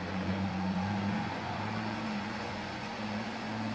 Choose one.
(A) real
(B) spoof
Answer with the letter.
B